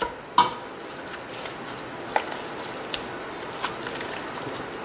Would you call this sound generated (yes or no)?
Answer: no